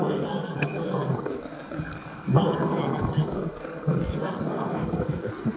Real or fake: fake